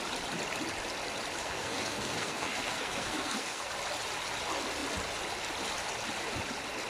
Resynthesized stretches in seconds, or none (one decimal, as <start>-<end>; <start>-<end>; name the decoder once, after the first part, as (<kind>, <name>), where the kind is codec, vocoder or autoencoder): 1.4-3.7 (codec, SNAC)